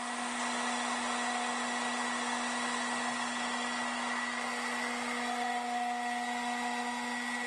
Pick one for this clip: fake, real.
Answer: real